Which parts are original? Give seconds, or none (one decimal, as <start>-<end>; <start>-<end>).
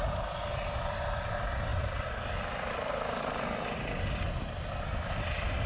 0.0-5.7